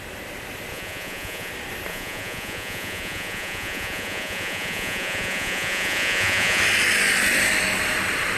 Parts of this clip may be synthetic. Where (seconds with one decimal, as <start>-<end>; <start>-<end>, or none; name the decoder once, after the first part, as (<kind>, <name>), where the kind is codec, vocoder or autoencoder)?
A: 0.7-1.5 (vocoder, Vocos); 1.9-6.6